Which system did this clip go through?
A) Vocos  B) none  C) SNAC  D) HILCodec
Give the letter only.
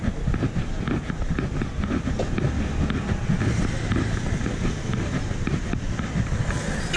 B